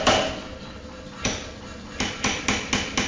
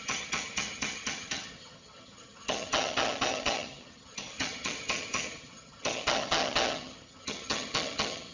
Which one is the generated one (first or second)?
second